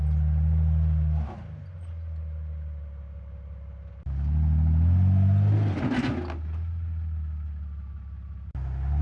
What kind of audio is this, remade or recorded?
recorded